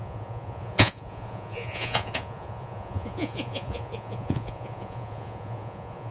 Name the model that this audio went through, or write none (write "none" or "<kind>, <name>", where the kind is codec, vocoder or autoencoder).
vocoder, Vocos